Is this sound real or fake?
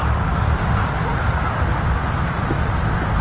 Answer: real